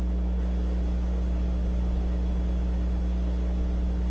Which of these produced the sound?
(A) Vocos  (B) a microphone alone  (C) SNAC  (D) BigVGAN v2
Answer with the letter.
B